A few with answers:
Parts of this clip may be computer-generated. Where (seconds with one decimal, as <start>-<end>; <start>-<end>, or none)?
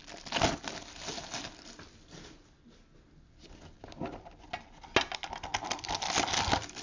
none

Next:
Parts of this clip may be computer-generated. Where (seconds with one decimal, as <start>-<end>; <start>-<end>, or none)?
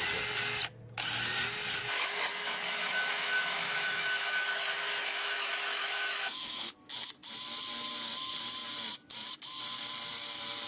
1.8-6.7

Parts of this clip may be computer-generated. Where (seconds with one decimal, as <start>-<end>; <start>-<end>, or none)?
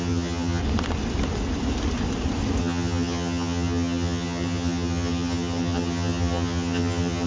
0.0-0.6; 2.6-7.3